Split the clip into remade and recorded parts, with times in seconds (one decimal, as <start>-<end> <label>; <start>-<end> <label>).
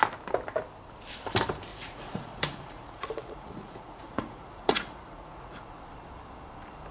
0.0-1.7 recorded; 1.7-5.8 remade; 5.8-6.9 recorded